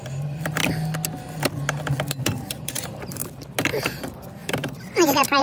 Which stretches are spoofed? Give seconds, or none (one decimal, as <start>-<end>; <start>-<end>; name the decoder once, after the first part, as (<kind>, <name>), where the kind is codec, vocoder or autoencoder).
0.0-0.6 (vocoder, BigVGAN v2); 2.2-3.2; 3.8-5.4